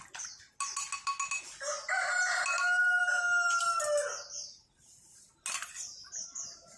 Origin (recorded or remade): recorded